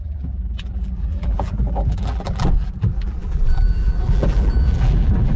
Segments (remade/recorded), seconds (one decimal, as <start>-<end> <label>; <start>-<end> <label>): 0.0-5.4 remade